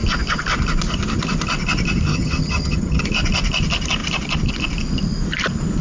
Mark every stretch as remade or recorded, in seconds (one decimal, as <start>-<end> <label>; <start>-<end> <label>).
0.0-2.1 recorded; 2.1-3.0 remade; 3.0-5.8 recorded

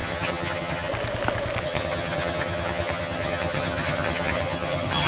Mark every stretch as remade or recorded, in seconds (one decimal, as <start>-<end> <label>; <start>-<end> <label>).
0.0-0.9 remade; 0.9-1.6 recorded; 1.6-5.1 remade

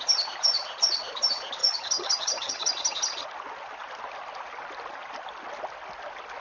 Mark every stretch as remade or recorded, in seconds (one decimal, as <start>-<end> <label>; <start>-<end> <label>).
0.0-1.6 recorded; 1.6-2.7 remade; 2.7-6.4 recorded